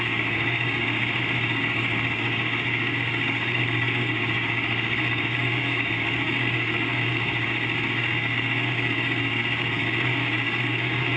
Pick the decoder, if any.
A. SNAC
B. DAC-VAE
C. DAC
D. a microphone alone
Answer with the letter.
C